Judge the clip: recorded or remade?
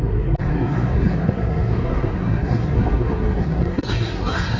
remade